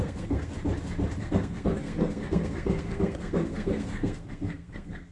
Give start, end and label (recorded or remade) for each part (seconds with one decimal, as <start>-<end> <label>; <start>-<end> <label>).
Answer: 0.0-0.5 remade; 0.5-1.2 recorded; 1.2-5.1 remade